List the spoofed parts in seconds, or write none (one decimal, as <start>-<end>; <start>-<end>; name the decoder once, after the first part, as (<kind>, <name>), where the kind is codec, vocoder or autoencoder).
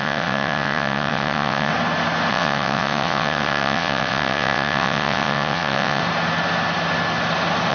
0.0-1.7 (vocoder, WaveNeXt); 2.3-6.0